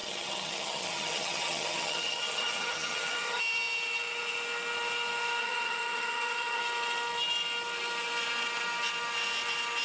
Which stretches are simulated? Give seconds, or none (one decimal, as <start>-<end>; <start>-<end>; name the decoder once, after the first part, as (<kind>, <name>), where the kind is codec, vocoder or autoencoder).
0.0-3.4 (vocoder, HiFi-GAN); 5.4-6.6